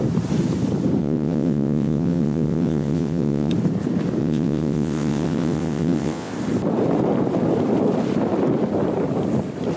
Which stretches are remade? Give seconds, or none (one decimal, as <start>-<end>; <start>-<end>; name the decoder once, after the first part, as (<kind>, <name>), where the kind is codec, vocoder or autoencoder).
1.0-3.5 (vocoder, WaveNeXt); 4.2-6.3